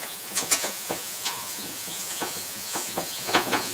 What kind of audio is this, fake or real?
fake